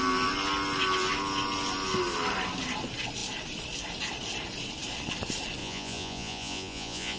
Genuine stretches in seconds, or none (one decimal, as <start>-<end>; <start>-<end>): 0.0-5.6